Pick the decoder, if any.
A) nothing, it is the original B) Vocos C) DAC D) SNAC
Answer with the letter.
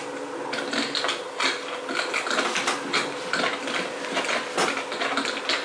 A